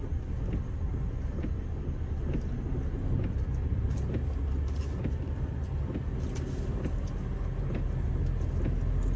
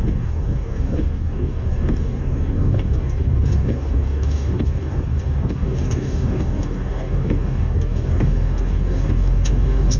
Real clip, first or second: first